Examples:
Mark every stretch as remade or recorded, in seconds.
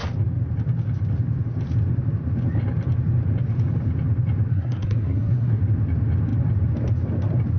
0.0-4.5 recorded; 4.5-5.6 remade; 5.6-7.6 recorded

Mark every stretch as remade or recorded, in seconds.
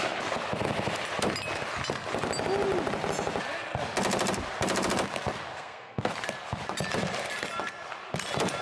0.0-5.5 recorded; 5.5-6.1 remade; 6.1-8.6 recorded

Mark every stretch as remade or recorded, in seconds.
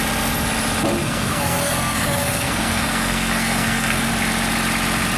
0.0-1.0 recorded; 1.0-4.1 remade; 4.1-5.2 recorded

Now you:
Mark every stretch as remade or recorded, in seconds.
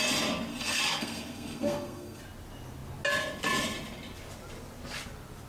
0.0-0.5 recorded; 0.5-2.2 remade; 2.2-5.5 recorded